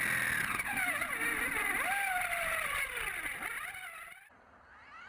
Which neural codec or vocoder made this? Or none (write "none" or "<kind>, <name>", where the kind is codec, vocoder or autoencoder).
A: none